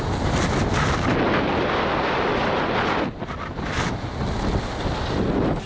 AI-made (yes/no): no